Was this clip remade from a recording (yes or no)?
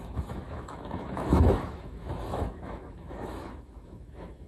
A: yes